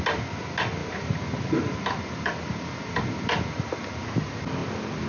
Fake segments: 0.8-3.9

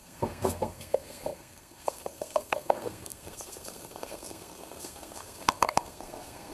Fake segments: 0.0-6.5